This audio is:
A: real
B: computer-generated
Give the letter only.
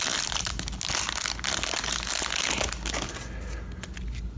A